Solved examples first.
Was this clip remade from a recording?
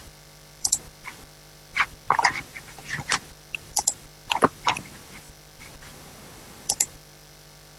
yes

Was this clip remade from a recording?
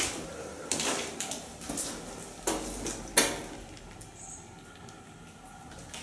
no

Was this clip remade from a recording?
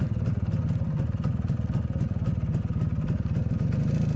no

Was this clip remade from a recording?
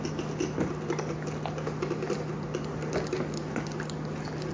no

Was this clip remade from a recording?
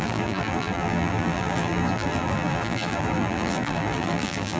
yes